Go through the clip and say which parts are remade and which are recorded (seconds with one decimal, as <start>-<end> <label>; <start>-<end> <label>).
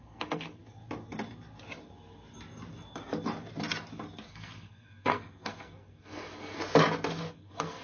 0.0-0.6 remade; 0.6-4.3 recorded; 4.3-6.6 remade; 6.6-7.3 recorded; 7.3-7.8 remade